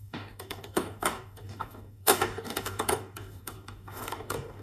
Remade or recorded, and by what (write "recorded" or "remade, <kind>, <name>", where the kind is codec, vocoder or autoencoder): remade, codec, DAC